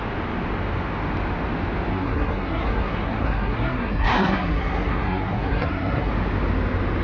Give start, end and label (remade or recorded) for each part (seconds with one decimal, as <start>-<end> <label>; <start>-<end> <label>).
0.0-1.9 recorded; 1.9-6.1 remade; 6.1-7.0 recorded